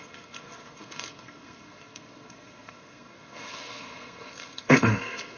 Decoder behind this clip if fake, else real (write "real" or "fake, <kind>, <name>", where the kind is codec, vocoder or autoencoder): fake, codec, SNAC